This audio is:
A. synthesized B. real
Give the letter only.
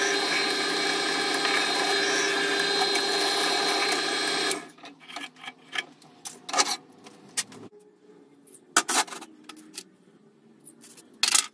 B